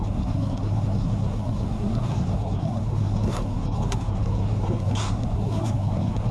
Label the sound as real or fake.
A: fake